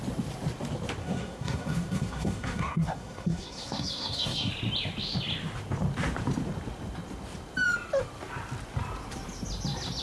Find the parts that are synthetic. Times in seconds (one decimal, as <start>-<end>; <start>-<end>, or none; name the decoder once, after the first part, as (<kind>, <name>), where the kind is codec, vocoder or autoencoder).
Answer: 1.0-4.5 (codec, SNAC)